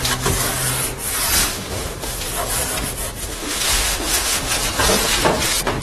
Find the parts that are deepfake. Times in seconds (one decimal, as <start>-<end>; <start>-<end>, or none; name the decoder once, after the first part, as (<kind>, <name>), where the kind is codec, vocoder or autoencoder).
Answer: 1.4-2.2 (autoencoder, DAC-VAE); 3.3-4.5